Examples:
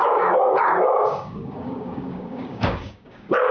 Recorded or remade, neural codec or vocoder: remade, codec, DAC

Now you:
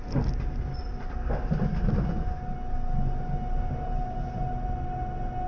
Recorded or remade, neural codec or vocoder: recorded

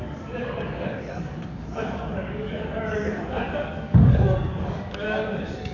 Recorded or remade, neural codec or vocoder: remade, codec, DAC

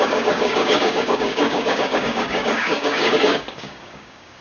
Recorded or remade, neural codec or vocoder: remade, codec, DAC